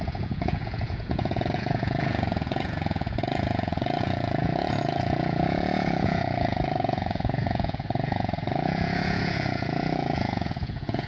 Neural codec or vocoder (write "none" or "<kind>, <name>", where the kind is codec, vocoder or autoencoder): vocoder, Vocos